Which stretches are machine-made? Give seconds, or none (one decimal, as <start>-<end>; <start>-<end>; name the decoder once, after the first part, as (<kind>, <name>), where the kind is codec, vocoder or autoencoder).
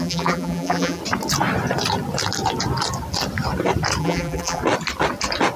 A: 0.0-1.0 (vocoder, BigVGAN v2); 4.0-4.6